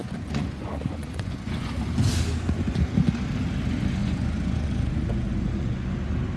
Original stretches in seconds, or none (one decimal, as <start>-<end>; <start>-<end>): 1.7-4.0; 5.9-6.4